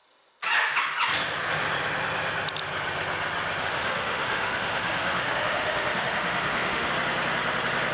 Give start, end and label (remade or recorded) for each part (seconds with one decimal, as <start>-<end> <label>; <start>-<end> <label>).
0.0-3.6 recorded; 3.6-6.9 remade; 6.9-7.9 recorded